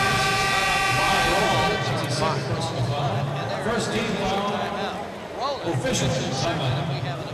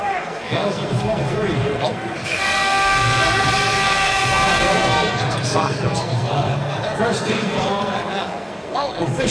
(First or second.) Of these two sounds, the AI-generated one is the second